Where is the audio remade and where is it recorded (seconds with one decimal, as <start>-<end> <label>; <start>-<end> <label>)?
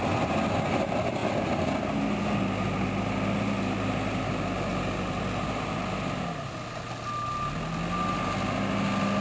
0.0-9.2 recorded